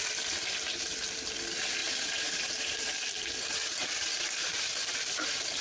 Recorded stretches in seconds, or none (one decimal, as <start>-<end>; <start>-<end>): 0.0-5.6